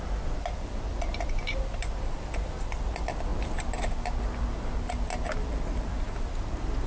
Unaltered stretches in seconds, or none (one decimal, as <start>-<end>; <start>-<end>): 0.0-6.9